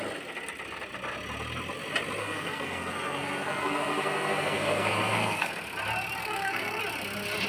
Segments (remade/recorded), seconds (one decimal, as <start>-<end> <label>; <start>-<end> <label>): 0.0-2.2 recorded; 2.2-5.5 remade; 5.5-6.2 recorded; 6.2-6.8 remade; 6.8-7.5 recorded

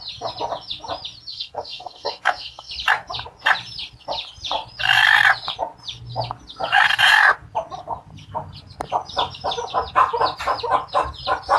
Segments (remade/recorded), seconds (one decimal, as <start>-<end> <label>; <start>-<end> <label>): 0.0-1.3 recorded; 1.3-2.7 remade; 2.7-11.6 recorded

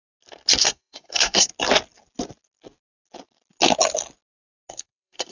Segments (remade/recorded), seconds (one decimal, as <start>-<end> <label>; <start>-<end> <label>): 0.0-0.6 recorded; 0.6-1.5 remade; 1.5-4.7 recorded; 4.7-5.3 remade

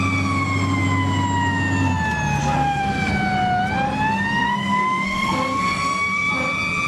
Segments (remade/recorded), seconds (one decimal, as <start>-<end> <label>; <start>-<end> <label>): 0.0-2.4 recorded; 2.4-3.1 remade; 3.1-4.4 recorded; 4.4-6.3 remade; 6.3-6.9 recorded

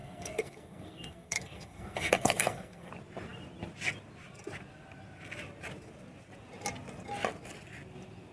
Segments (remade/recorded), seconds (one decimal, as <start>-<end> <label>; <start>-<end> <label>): 0.0-2.9 remade; 2.9-8.3 recorded